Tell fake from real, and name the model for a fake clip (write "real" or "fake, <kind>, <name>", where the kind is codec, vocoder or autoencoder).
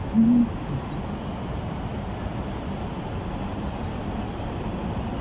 real